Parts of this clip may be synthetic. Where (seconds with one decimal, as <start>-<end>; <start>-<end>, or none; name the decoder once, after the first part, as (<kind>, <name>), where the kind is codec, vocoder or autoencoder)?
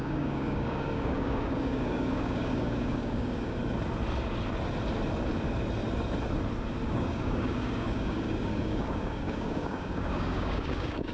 0.0-3.6 (codec, DAC); 6.9-11.1